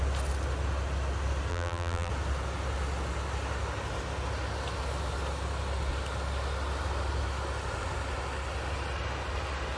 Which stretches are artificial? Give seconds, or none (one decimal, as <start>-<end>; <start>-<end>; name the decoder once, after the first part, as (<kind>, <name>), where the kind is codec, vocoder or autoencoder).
1.5-2.1 (vocoder, BigVGAN v2)